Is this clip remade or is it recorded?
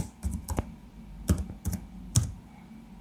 remade